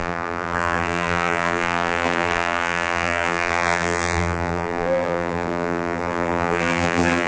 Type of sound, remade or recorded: remade